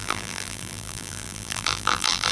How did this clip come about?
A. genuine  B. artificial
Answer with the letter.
B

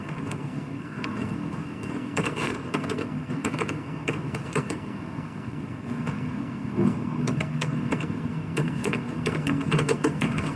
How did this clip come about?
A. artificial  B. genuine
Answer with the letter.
A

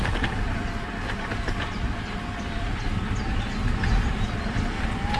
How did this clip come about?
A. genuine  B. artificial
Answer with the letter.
A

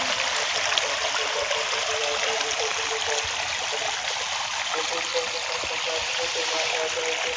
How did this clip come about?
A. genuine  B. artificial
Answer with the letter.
A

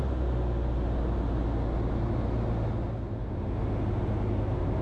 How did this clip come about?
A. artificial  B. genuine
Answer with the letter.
B